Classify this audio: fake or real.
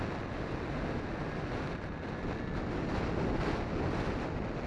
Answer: real